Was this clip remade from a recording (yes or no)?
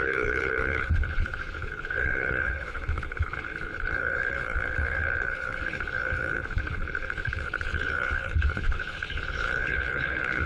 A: yes